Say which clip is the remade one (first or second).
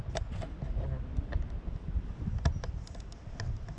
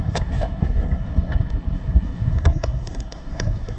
second